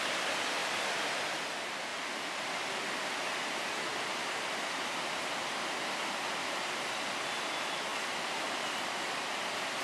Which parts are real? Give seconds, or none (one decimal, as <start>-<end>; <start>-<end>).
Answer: 0.0-9.8